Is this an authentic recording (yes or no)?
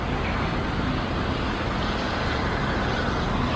yes